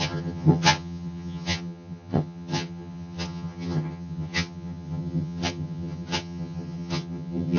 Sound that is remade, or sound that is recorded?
remade